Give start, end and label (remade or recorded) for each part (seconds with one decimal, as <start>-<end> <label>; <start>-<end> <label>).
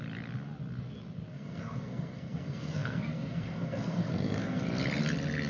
0.0-1.3 recorded; 1.3-4.6 remade; 4.6-5.5 recorded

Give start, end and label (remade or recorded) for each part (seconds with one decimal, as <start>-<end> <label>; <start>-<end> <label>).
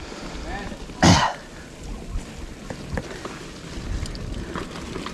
0.0-5.1 recorded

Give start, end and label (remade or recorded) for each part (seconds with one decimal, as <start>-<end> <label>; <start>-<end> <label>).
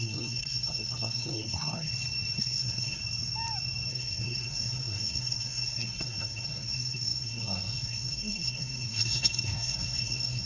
0.0-1.9 remade; 1.9-2.4 recorded; 2.4-3.0 remade; 3.0-3.9 recorded; 3.9-10.5 remade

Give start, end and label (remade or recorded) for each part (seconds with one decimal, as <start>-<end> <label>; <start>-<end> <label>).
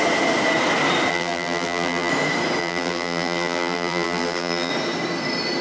0.0-1.1 recorded; 1.1-2.1 remade; 2.1-2.6 recorded; 2.6-4.7 remade; 4.7-5.6 recorded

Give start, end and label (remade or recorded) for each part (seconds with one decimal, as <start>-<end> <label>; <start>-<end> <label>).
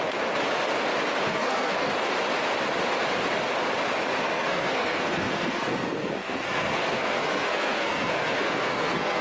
0.0-1.3 recorded; 1.3-1.9 remade; 1.9-4.2 recorded; 4.2-9.2 remade